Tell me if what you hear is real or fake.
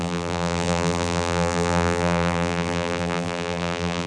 fake